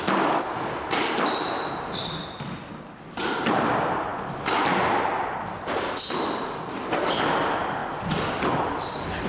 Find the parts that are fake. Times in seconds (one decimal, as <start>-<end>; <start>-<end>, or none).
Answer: none

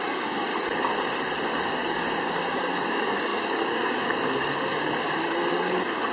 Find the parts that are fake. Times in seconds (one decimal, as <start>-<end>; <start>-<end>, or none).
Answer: 0.0-0.5; 1.6-6.1

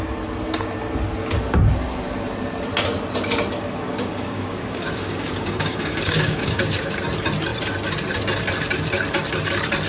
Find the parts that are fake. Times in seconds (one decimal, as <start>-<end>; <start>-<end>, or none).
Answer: 3.9-6.9

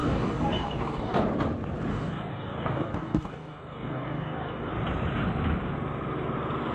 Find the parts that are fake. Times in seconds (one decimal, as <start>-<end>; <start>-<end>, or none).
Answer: 0.0-1.2; 1.9-4.7

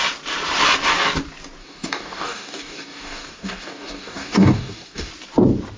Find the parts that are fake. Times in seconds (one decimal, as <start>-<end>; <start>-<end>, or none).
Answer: 1.6-5.1

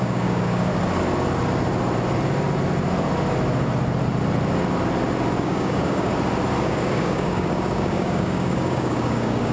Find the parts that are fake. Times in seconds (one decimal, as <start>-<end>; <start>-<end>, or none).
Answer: 0.0-0.7; 5.4-6.1; 6.6-9.5

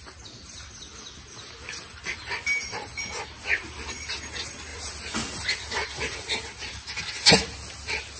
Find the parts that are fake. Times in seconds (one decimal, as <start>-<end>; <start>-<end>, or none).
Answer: none